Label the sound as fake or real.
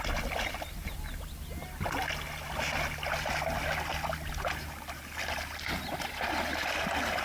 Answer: real